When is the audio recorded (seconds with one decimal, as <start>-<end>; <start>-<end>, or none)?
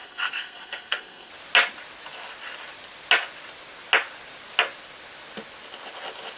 1.3-6.4